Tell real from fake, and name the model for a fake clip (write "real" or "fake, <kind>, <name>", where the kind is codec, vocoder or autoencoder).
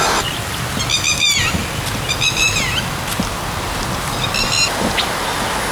real